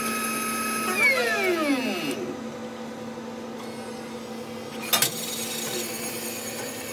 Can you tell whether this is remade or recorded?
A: recorded